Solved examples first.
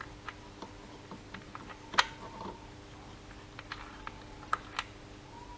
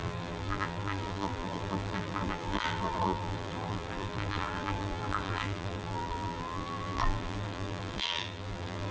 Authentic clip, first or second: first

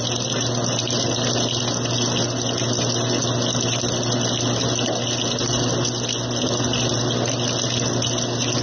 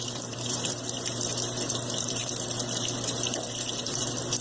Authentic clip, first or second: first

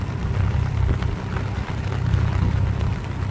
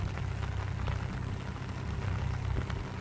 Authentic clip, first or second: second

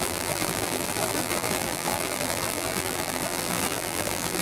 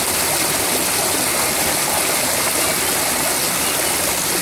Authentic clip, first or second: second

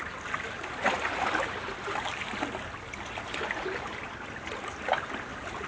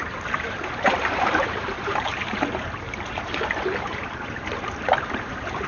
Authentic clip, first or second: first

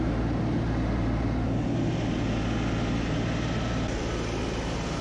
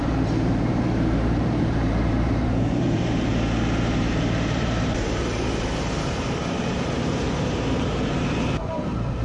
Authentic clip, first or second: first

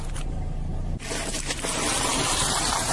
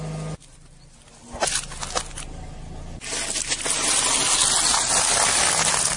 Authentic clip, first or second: second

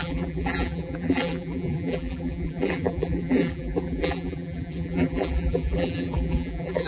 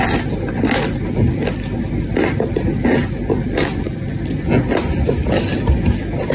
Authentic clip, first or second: second